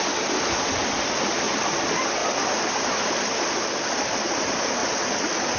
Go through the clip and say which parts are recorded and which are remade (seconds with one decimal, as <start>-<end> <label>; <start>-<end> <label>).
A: 0.0-5.6 recorded